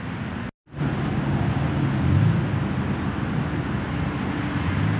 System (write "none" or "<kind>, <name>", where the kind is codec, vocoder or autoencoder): none